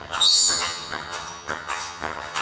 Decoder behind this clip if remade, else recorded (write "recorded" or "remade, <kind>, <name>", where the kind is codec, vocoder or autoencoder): remade, vocoder, HiFi-GAN